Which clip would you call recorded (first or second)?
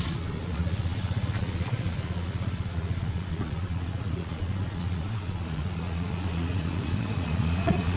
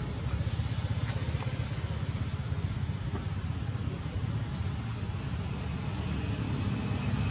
second